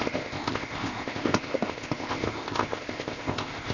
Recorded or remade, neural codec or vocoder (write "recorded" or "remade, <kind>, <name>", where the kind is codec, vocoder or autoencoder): remade, codec, ZipCodec